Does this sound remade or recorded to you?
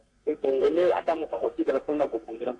remade